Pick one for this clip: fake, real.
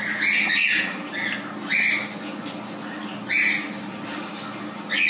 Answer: real